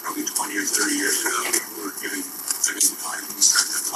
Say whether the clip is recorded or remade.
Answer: remade